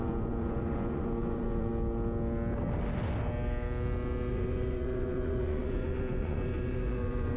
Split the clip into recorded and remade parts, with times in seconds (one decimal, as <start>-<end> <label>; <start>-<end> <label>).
0.0-1.7 remade; 1.7-4.3 recorded; 4.3-7.4 remade